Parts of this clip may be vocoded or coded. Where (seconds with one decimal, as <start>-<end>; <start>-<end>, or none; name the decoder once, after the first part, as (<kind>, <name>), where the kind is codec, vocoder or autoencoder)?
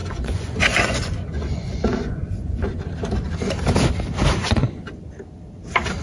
0.0-2.8 (vocoder, Vocos); 4.4-4.9